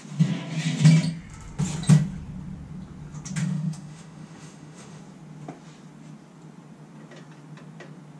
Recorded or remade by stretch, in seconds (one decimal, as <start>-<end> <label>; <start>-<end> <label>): 0.0-3.4 recorded; 3.4-5.0 remade; 5.0-8.2 recorded